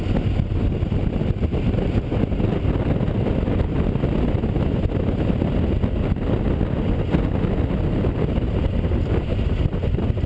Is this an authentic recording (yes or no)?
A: yes